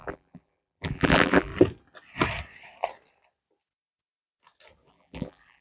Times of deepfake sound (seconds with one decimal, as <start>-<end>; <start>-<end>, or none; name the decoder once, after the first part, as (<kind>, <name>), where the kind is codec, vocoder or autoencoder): 0.0-1.5 (vocoder, BigVGAN v2); 4.9-5.6